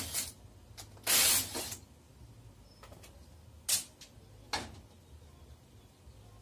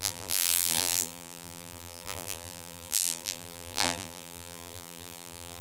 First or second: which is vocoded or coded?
second